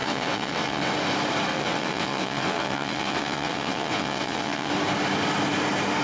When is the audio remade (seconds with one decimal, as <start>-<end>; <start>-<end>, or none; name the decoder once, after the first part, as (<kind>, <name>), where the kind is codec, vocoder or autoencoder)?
0.0-0.9 (vocoder, WaveNeXt); 1.5-4.7